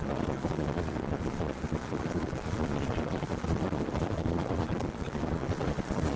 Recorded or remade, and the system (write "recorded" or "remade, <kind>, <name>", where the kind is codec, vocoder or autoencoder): remade, vocoder, Vocos